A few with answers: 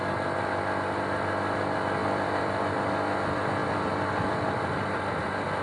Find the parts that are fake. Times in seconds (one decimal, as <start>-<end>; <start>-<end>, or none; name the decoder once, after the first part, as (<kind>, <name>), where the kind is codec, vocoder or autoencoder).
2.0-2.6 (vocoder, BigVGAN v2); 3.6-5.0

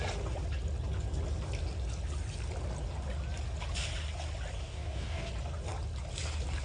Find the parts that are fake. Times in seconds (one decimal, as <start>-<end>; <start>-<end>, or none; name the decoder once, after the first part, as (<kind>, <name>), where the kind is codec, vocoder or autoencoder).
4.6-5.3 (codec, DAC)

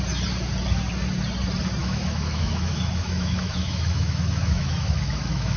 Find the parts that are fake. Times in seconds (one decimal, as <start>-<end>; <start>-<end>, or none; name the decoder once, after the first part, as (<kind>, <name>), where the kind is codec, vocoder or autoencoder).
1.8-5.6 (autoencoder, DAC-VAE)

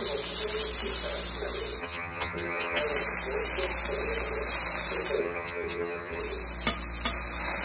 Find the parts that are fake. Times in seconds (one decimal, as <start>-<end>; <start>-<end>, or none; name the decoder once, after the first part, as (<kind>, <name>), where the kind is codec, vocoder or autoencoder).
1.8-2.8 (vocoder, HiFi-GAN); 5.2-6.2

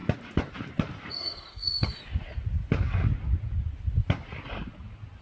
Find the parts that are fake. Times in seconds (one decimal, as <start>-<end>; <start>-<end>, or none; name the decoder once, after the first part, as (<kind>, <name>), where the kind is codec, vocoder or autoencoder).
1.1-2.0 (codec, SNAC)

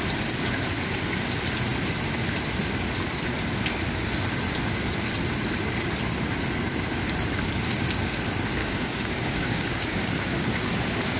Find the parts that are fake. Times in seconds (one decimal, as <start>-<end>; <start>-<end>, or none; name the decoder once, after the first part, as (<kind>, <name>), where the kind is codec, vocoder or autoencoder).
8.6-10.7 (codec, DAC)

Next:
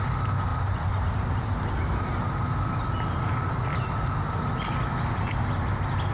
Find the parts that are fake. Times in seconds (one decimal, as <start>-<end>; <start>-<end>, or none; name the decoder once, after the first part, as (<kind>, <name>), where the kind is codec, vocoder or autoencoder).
0.5-4.2 (vocoder, BigVGAN v2)

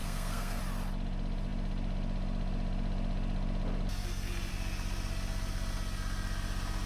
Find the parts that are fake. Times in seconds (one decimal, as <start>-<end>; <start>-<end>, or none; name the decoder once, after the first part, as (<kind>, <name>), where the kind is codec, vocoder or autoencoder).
0.0-0.6 (codec, SNAC)